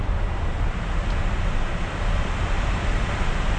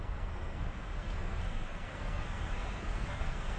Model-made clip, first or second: second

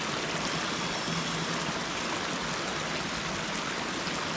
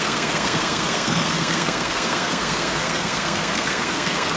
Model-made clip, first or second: second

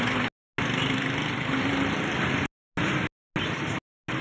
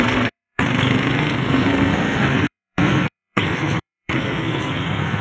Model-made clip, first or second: second